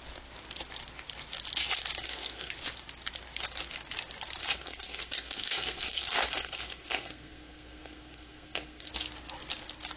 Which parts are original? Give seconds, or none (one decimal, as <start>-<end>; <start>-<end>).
0.0-2.0; 2.5-4.4; 8.9-10.0